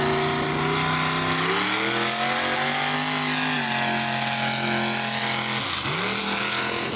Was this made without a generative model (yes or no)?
yes